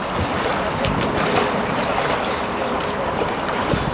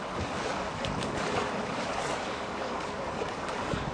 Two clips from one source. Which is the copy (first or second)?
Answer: second